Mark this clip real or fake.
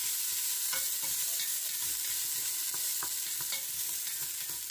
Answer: real